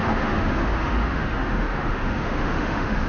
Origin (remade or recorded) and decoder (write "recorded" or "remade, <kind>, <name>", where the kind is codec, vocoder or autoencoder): remade, autoencoder, DAC-VAE